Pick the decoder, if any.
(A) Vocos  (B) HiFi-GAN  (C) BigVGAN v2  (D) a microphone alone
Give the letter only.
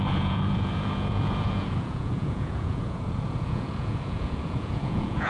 A